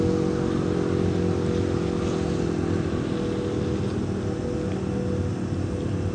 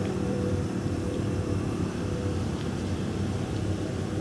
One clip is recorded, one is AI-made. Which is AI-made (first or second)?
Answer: second